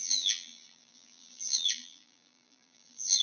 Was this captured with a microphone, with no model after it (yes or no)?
no